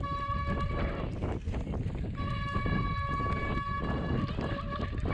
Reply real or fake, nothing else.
real